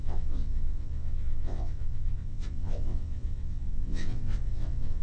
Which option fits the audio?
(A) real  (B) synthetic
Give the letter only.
B